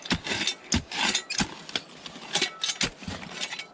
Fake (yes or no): no